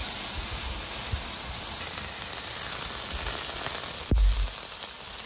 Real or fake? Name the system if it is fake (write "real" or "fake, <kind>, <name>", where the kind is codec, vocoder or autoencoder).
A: real